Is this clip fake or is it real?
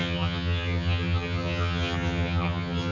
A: fake